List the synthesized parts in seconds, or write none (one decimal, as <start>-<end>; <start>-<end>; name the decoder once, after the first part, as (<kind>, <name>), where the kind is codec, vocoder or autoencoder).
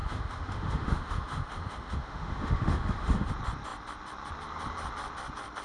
0.0-3.3 (autoencoder, DAC-VAE)